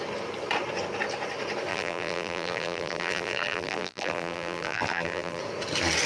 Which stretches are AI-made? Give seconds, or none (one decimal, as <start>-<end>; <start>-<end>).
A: 1.7-5.4